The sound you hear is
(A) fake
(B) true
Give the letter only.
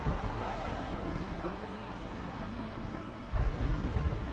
A